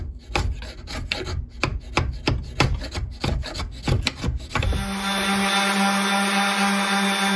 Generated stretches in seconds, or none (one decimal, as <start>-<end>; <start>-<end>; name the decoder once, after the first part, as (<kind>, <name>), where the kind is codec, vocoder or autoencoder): none